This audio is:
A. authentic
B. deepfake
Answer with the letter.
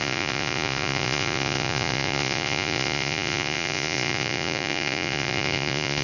B